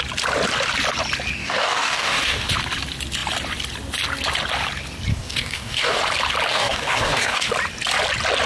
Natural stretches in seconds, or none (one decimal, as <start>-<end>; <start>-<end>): 0.0-1.4; 2.5-5.1; 6.0-6.5; 7.5-8.5

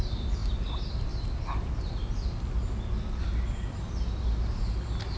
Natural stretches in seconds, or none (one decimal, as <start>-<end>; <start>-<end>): 0.0-5.2

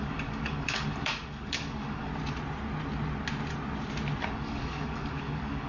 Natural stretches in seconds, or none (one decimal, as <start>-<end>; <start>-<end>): 2.1-4.2